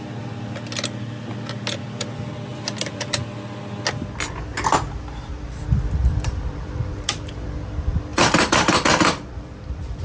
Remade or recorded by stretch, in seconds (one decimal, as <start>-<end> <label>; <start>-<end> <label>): 0.0-2.5 recorded; 2.5-3.2 remade; 3.2-6.0 recorded; 6.0-6.9 remade; 6.9-8.1 recorded; 8.1-10.0 remade